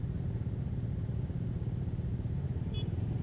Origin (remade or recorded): recorded